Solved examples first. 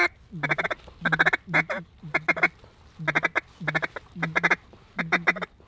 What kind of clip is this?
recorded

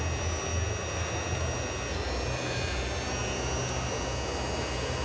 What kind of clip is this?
recorded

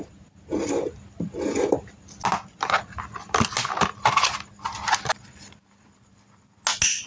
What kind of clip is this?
recorded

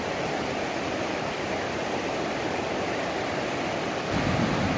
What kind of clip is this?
recorded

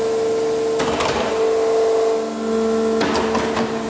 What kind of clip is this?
recorded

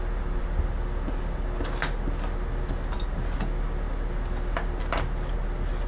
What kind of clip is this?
recorded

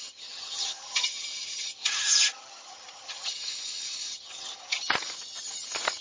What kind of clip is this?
remade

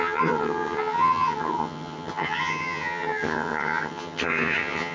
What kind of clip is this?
remade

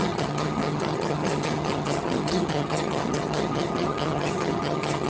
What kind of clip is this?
remade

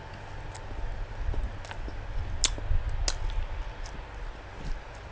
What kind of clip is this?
recorded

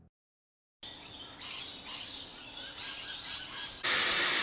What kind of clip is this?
recorded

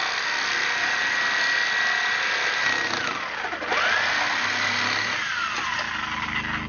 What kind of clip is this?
recorded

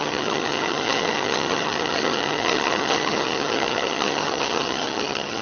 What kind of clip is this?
remade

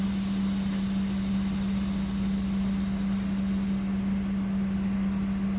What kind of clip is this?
recorded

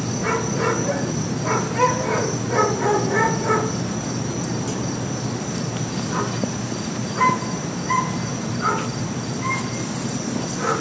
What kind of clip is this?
recorded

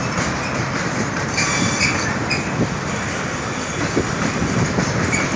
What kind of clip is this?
recorded